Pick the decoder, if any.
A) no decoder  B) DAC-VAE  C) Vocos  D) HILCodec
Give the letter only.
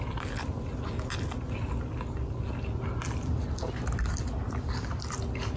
A